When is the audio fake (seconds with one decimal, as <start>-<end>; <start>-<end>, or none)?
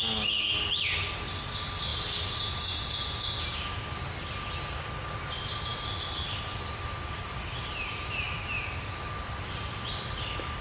7.5-8.8